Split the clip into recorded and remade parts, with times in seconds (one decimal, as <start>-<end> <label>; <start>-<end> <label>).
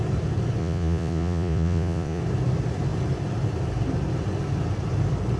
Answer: 0.0-0.6 recorded; 0.6-2.2 remade; 2.2-5.4 recorded